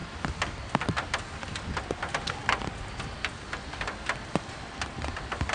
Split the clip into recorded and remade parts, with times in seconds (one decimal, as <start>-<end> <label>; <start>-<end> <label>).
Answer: 0.0-5.5 recorded